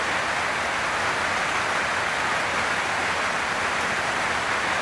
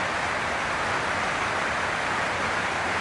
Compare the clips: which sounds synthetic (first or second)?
second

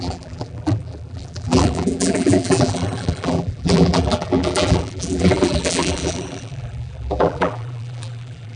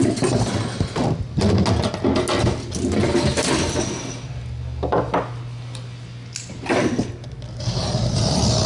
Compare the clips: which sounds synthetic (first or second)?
first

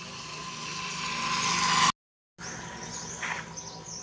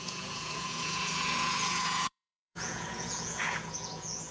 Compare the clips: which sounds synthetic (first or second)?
second